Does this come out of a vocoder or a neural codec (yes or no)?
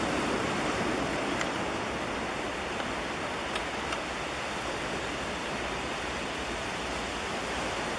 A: no